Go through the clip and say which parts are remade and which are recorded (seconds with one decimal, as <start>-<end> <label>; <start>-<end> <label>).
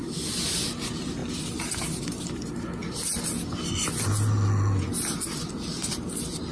0.0-6.5 recorded